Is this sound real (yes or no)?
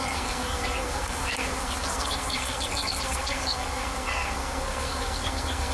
no